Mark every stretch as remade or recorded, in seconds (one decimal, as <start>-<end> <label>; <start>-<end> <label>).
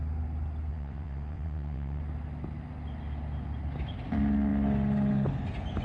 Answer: 0.0-0.7 recorded; 0.7-2.0 remade; 2.0-5.8 recorded